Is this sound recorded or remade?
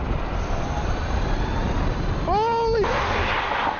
recorded